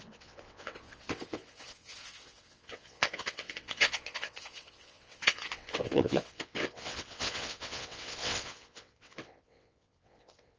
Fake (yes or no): yes